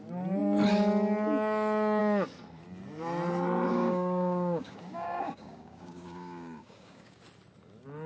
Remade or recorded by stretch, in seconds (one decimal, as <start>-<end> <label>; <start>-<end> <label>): 0.0-3.7 recorded; 3.7-7.2 remade; 7.2-8.1 recorded